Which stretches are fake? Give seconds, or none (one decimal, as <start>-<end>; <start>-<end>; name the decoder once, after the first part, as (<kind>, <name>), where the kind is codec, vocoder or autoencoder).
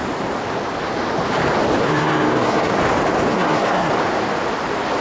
1.8-2.7 (codec, SNAC); 3.3-3.9